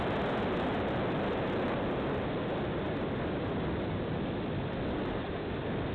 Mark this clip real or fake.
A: real